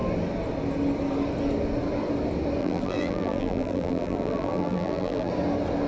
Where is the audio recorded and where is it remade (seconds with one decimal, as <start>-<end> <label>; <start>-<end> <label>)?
0.0-2.6 recorded; 2.6-5.3 remade; 5.3-5.9 recorded